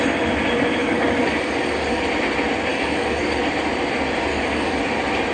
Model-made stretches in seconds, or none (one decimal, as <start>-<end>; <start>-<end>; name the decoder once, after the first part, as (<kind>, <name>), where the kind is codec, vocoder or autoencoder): 0.8-2.0 (codec, DAC); 2.7-3.4; 4.3-4.8